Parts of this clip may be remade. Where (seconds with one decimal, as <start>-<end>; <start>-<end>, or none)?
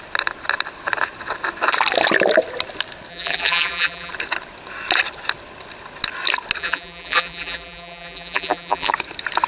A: 3.1-4.1; 6.6-8.9